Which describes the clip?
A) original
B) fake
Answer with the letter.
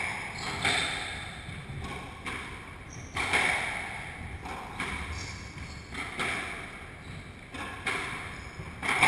A